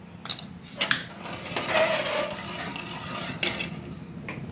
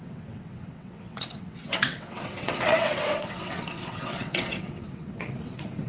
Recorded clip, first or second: first